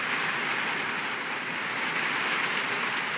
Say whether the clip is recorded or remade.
recorded